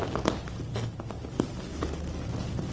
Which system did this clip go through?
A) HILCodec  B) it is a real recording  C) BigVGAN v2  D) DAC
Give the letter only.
B